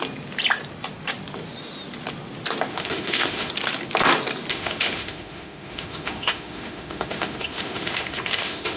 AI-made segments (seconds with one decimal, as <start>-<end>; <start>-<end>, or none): 2.7-3.5; 4.5-8.8